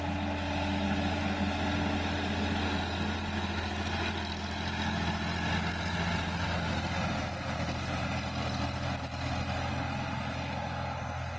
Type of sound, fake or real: real